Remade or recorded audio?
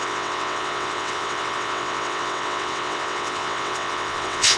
remade